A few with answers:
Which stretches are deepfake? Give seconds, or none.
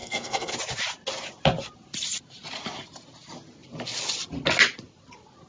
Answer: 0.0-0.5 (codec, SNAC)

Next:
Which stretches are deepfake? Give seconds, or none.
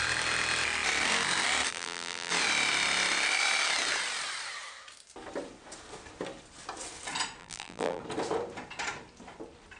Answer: 1.7-2.3 (vocoder, BigVGAN v2); 7.4-8.0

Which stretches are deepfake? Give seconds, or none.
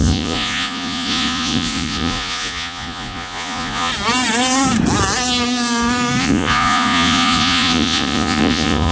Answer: 0.0-3.9 (vocoder, Vocos); 6.2-8.9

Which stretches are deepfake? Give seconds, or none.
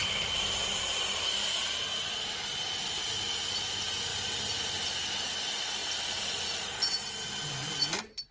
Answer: 0.0-1.8 (vocoder, BigVGAN v2); 4.1-4.8; 5.8-6.4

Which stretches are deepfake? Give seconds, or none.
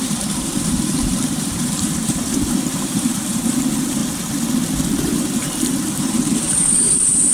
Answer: 0.0-4.0 (vocoder, BigVGAN v2); 5.1-7.3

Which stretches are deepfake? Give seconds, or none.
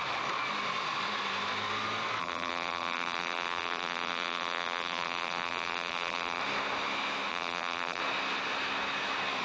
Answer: 2.2-6.4 (vocoder, BigVGAN v2); 7.3-8.0